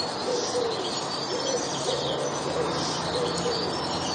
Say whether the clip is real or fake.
real